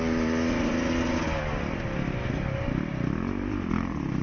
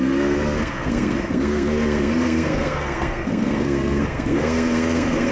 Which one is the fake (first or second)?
second